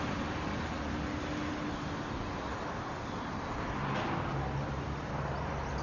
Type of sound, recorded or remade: recorded